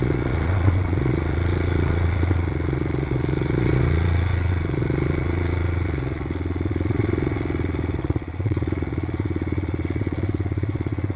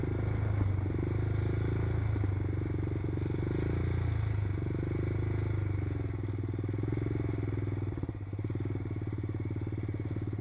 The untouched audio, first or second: second